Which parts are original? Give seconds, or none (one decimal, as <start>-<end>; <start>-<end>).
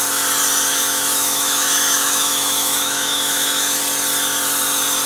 0.0-0.7; 3.8-5.1